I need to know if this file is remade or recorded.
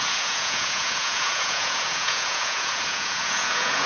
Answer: remade